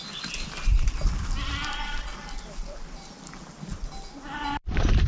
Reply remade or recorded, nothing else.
recorded